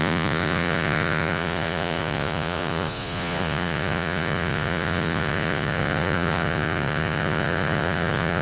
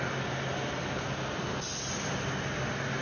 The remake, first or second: first